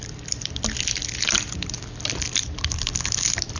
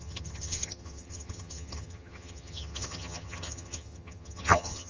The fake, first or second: second